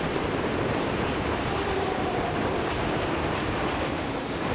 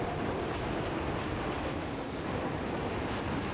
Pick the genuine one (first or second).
second